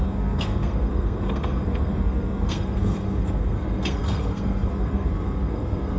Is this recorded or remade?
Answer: remade